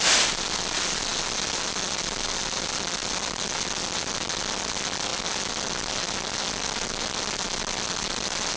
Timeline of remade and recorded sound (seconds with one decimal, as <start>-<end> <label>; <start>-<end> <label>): 0.0-8.6 recorded